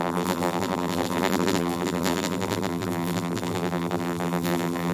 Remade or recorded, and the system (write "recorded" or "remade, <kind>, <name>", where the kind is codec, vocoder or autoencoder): remade, vocoder, BigVGAN v2